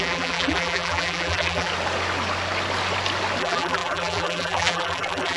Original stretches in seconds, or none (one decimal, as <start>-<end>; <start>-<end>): 1.7-3.4